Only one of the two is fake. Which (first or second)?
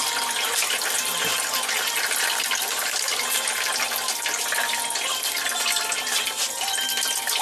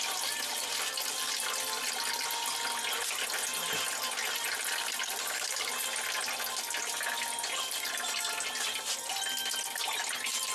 first